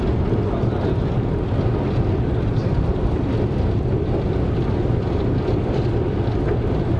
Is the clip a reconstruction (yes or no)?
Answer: no